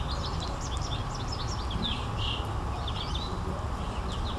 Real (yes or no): yes